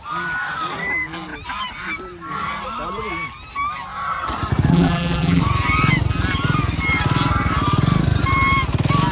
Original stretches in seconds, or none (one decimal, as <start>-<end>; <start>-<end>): 0.0-4.7; 5.4-9.1